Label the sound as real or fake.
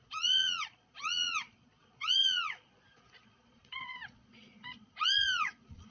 fake